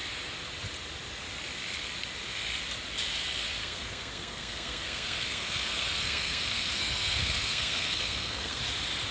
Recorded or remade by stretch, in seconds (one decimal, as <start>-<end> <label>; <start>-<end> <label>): 0.0-3.6 recorded; 3.6-8.6 remade; 8.6-9.1 recorded